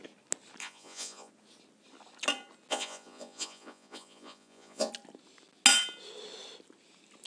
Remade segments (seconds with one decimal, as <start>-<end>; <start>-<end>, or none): 0.6-1.3; 2.7-4.9